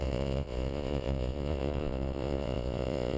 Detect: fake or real fake